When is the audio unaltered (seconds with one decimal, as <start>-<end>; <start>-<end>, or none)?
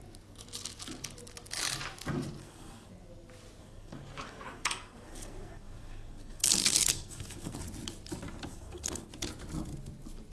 0.0-2.4; 2.9-3.6; 7.6-8.5; 9.1-10.3